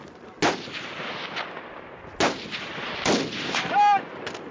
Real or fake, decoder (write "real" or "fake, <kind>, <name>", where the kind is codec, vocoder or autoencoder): real